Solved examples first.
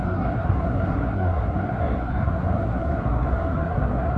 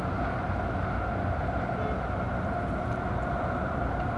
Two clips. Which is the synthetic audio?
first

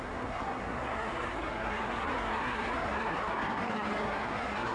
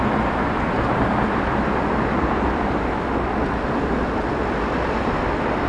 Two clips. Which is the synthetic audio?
first